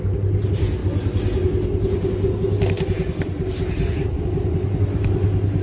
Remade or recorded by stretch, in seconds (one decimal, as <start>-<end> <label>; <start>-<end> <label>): 0.0-5.6 recorded